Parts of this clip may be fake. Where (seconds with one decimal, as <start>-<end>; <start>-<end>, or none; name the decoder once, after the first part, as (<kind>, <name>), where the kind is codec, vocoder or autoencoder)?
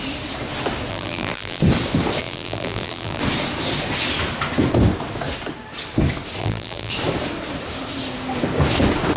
0.9-1.6 (vocoder, BigVGAN v2); 2.2-3.2; 6.4-6.9